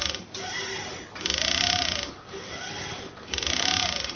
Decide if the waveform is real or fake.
real